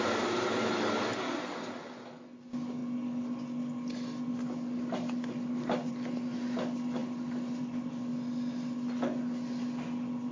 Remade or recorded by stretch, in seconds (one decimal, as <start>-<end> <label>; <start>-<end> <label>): 0.0-10.3 recorded